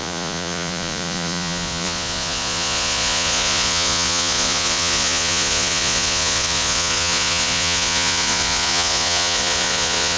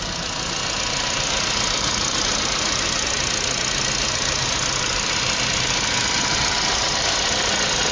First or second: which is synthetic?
first